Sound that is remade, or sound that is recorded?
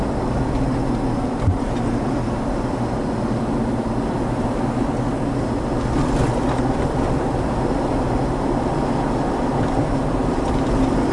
recorded